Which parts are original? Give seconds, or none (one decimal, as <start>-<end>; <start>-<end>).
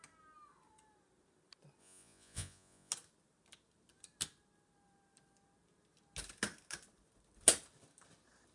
0.0-1.8; 2.9-8.5